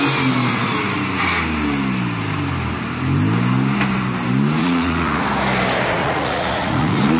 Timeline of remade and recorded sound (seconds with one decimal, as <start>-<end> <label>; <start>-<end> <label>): 0.0-4.6 recorded; 4.6-5.2 remade; 5.2-6.0 recorded; 6.0-7.2 remade

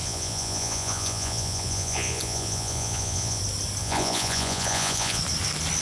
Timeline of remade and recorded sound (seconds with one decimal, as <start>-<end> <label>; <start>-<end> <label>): 0.0-3.4 remade; 3.4-3.8 recorded; 3.8-5.2 remade; 5.2-5.8 recorded

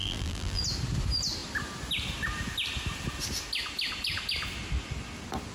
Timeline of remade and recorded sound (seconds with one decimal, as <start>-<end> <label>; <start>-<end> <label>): 0.0-0.6 remade; 0.6-5.5 recorded

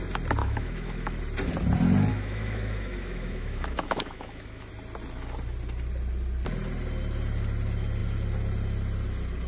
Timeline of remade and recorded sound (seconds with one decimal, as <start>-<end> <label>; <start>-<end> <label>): 0.0-0.4 recorded; 0.4-1.2 remade; 1.2-2.1 recorded; 2.1-4.7 remade; 4.7-9.5 recorded

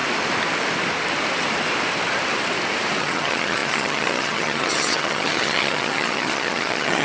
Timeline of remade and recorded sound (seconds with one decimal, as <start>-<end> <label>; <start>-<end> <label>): 0.0-3.0 recorded; 3.0-7.0 remade

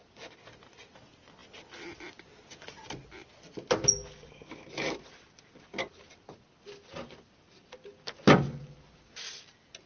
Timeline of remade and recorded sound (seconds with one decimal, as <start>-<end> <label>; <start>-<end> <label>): 0.0-9.9 recorded

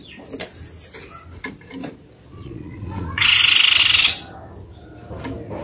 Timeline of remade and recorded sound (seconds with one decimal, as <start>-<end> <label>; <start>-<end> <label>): 0.0-1.8 recorded; 1.8-3.4 remade; 3.4-5.6 recorded

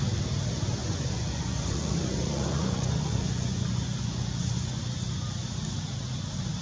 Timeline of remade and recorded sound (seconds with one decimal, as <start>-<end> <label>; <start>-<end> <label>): 0.0-0.8 recorded; 0.8-4.8 remade; 4.8-6.6 recorded